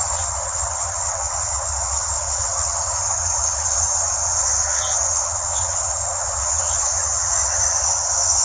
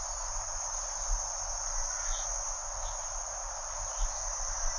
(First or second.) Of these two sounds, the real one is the second